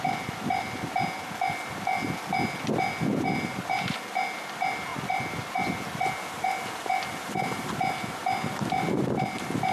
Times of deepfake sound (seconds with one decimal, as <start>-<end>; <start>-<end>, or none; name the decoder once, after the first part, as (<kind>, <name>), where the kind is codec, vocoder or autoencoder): none